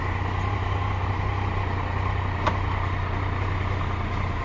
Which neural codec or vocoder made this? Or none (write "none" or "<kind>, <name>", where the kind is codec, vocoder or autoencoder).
none